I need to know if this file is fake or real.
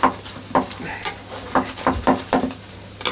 real